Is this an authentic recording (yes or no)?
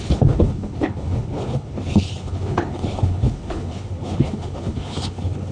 no